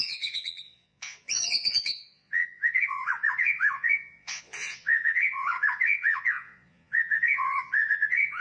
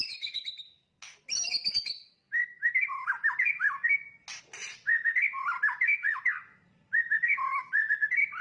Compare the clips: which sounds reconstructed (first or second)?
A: first